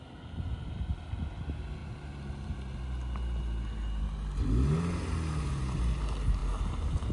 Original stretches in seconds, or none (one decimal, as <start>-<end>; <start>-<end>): 0.0-7.1